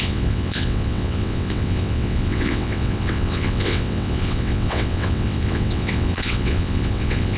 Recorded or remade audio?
remade